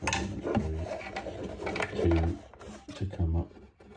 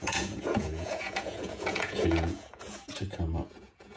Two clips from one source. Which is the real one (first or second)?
first